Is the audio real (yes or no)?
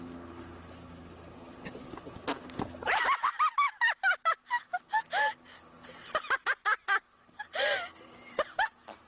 yes